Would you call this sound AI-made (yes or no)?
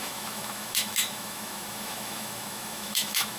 yes